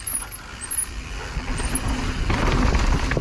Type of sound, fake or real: real